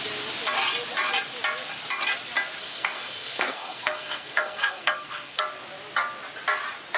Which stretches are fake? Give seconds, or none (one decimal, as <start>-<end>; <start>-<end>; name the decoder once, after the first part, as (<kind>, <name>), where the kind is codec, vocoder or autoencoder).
2.6-5.4 (codec, SNAC)